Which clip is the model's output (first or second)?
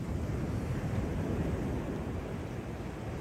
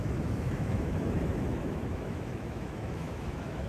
second